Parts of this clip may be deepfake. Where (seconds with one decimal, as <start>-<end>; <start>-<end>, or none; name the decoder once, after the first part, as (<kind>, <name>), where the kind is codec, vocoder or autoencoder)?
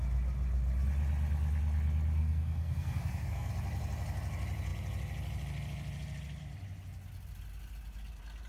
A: 2.2-3.5 (codec, SNAC)